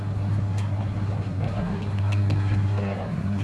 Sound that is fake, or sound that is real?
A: fake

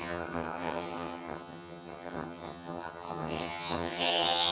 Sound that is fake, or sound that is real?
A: fake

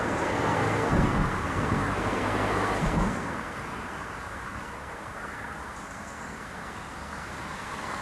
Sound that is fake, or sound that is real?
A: fake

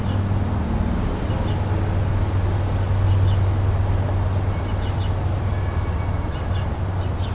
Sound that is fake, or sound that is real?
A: real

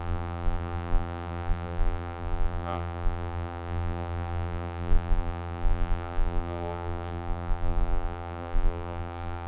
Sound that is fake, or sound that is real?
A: fake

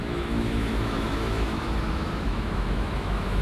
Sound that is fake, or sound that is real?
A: fake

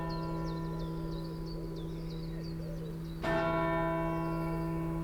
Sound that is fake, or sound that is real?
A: real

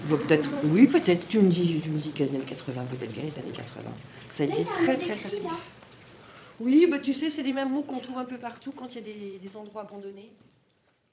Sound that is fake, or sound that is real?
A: fake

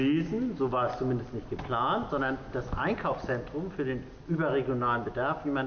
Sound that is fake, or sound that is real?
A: real